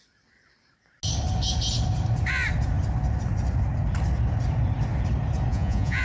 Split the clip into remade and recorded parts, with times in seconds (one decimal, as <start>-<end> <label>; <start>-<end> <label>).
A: 0.0-5.5 recorded; 5.5-6.0 remade